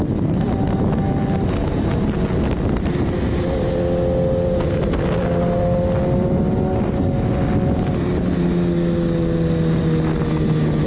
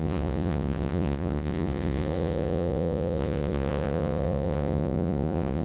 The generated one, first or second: second